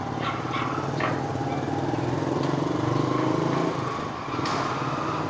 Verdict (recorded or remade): recorded